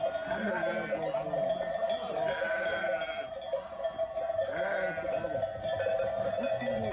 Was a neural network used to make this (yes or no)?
no